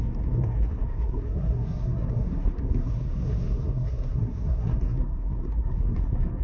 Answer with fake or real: fake